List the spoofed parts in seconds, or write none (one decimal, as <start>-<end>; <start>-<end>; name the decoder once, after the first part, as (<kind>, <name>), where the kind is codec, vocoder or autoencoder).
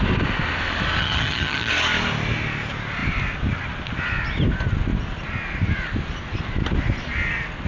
1.0-1.7 (vocoder, HiFi-GAN)